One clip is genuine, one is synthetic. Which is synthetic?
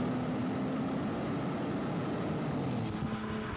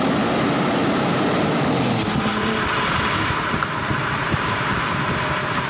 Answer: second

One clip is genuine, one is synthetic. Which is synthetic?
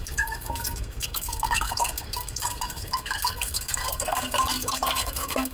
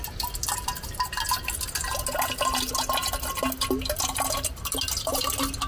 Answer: first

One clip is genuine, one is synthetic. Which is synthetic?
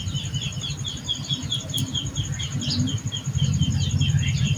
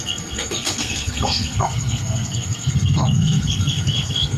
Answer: second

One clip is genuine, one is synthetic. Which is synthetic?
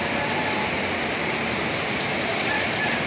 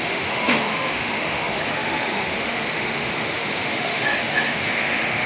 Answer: second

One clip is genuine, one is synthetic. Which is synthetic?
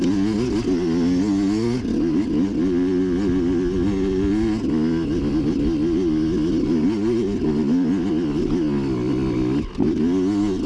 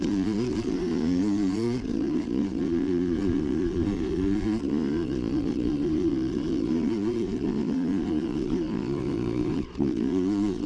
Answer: second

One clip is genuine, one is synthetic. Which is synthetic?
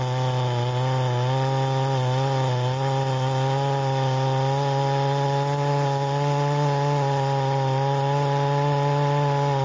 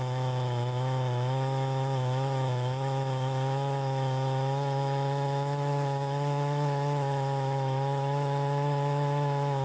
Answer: second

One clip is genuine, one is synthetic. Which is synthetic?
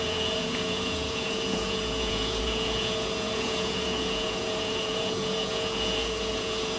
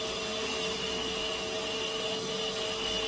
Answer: first